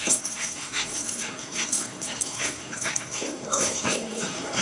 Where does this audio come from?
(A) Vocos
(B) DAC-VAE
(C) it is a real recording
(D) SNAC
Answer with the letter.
D